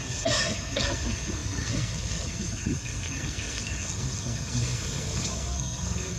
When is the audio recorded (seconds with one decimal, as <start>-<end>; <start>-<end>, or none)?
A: none